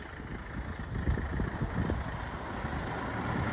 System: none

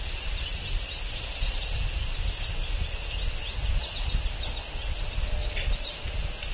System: none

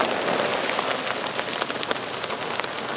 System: none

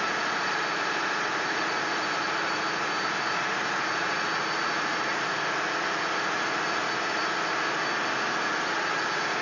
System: vocoder, Vocos